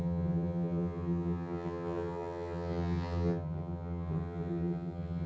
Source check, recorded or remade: remade